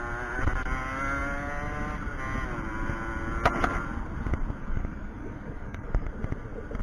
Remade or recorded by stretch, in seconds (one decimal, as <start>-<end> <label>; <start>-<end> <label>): 0.0-4.6 recorded; 4.6-6.1 remade; 6.1-6.8 recorded